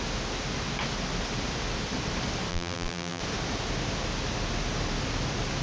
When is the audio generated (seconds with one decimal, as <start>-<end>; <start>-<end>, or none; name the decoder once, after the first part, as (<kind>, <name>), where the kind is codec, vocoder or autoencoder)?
2.5-3.2 (vocoder, BigVGAN v2)